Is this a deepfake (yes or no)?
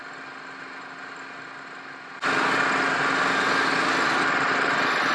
no